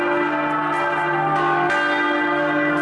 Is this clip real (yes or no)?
yes